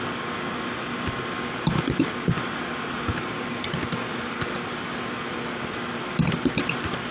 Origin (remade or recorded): recorded